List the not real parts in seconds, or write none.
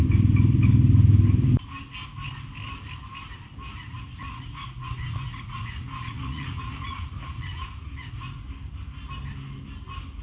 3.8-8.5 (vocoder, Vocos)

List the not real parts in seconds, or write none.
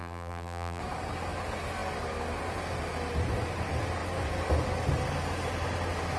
0.0-0.8 (vocoder, BigVGAN v2)